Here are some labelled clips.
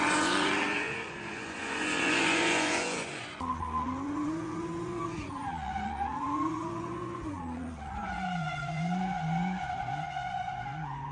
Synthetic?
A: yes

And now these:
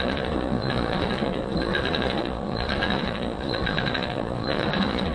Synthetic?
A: yes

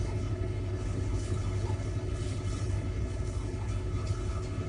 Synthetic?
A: yes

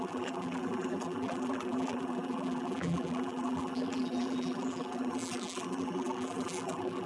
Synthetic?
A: yes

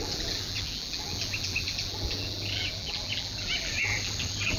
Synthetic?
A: yes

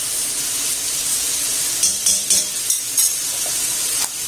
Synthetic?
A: no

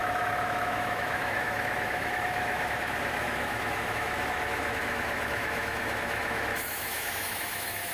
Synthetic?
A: yes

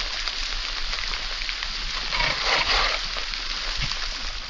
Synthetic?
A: no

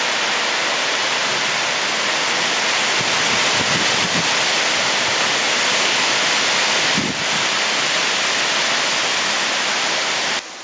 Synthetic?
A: no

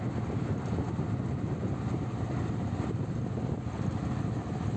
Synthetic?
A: no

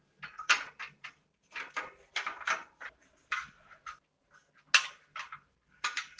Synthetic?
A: no